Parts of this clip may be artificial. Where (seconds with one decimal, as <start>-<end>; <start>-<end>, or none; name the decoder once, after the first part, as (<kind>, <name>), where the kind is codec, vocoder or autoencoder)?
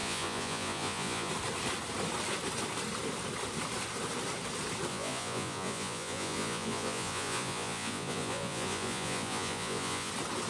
0.0-1.3 (vocoder, Vocos); 4.9-10.1